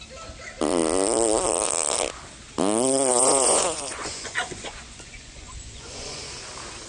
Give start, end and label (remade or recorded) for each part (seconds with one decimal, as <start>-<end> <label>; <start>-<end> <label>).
0.0-3.1 recorded; 3.1-6.3 remade; 6.3-6.9 recorded